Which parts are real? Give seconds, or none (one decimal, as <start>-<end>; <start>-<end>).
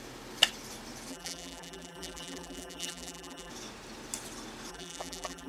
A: 0.0-1.1; 3.5-4.7